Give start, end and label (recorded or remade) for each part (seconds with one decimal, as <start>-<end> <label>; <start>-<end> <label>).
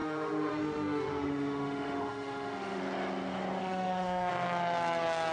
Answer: 0.0-2.8 remade; 2.8-3.6 recorded; 3.6-4.3 remade; 4.3-5.3 recorded